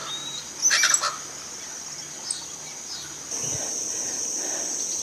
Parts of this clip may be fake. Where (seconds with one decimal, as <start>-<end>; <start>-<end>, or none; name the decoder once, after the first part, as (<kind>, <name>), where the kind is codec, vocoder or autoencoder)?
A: none